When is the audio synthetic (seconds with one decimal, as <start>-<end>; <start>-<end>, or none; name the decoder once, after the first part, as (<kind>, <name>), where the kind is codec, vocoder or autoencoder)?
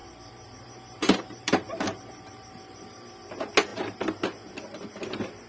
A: 0.0-3.3 (vocoder, BigVGAN v2)